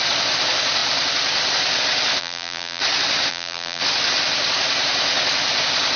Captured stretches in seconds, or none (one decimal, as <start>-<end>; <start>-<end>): 0.0-2.2; 2.8-3.3; 3.8-6.0